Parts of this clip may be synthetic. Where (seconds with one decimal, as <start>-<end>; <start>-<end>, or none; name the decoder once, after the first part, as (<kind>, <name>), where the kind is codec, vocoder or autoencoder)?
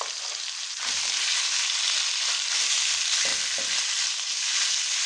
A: none